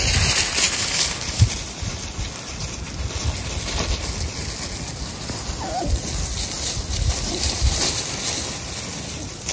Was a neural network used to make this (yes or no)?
no